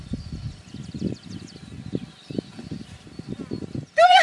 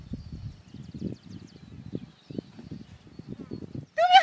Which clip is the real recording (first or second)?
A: second